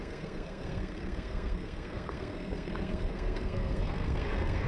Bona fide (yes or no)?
no